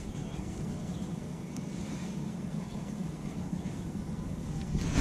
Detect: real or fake fake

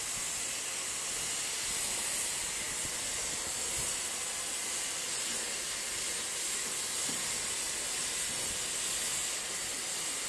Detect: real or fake real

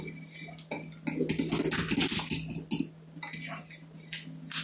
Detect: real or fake real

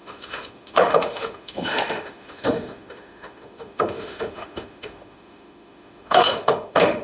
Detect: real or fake fake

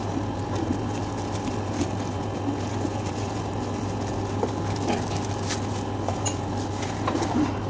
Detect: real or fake real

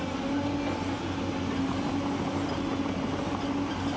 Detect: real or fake real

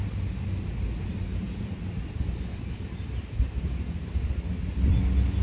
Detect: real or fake real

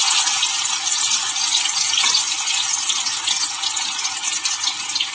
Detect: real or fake real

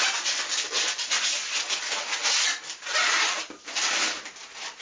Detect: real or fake real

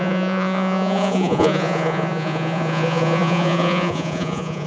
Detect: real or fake fake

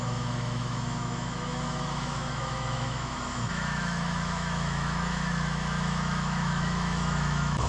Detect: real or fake fake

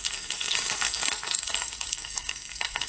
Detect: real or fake fake